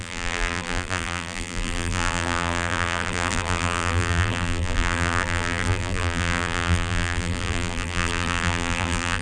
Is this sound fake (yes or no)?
yes